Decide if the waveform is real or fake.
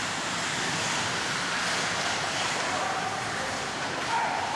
real